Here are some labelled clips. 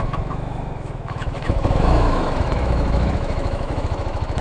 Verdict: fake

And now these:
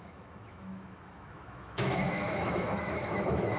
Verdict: fake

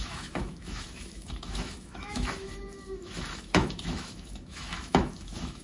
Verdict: fake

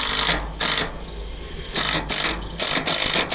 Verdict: real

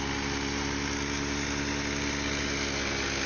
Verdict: real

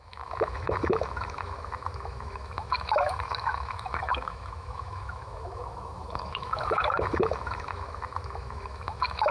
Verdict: fake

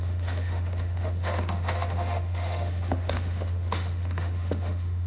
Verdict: fake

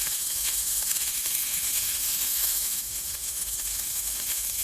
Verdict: fake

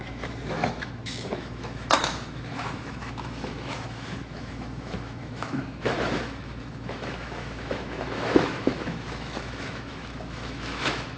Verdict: fake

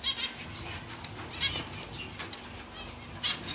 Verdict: real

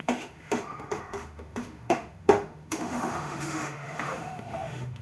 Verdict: fake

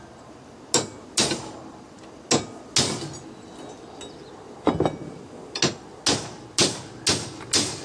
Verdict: real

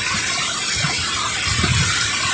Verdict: real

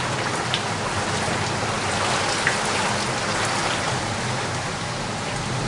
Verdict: real